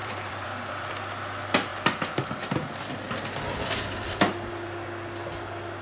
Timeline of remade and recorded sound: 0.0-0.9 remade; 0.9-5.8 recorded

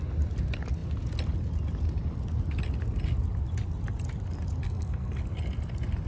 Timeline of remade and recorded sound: 0.0-4.6 recorded; 4.6-5.2 remade; 5.2-6.1 recorded

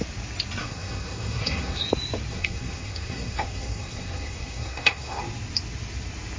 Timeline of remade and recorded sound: 0.0-0.6 recorded; 0.6-1.9 remade; 1.9-2.3 recorded; 2.3-5.2 remade; 5.2-6.4 recorded

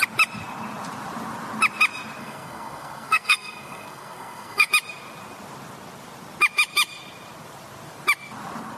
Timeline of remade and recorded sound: 0.0-2.2 recorded; 2.2-4.7 remade; 4.7-8.8 recorded

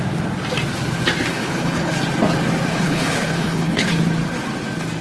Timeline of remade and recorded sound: 0.0-1.3 recorded; 1.3-1.9 remade; 1.9-2.7 recorded; 2.7-3.9 remade; 3.9-5.0 recorded